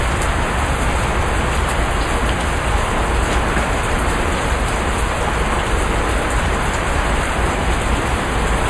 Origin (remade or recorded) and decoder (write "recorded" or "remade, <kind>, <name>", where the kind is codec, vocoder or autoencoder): recorded